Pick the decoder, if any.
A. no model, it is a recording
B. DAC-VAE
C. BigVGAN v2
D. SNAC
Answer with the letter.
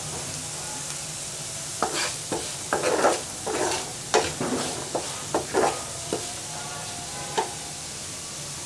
A